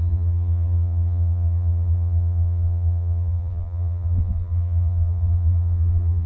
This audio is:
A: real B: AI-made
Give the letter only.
B